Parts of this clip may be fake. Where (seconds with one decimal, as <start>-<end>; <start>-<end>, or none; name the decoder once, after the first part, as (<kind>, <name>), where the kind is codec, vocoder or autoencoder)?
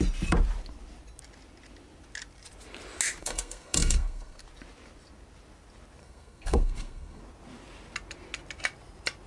3.2-4.4 (codec, SNAC); 6.0-7.2